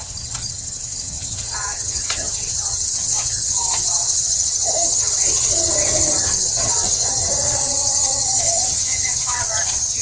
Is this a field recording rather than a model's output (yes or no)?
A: no